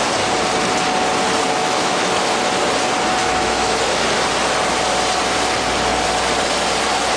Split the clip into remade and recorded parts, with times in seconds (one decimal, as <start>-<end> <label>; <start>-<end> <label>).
0.0-1.6 recorded; 1.6-2.1 remade; 2.1-3.2 recorded; 3.2-3.8 remade; 3.8-7.2 recorded